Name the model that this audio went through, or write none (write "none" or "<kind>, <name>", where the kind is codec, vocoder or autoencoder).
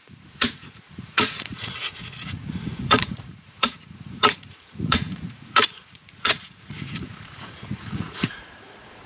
vocoder, Vocos